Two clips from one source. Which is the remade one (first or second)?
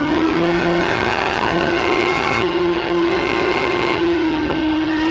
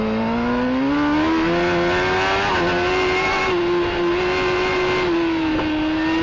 first